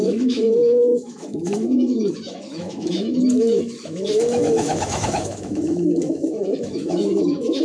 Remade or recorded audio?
remade